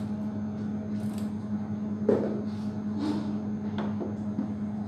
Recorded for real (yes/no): yes